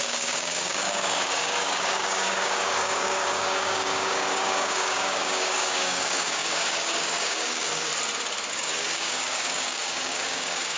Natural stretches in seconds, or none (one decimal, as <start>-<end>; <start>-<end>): 7.9-8.5